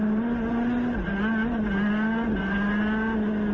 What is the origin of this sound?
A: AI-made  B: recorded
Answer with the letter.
B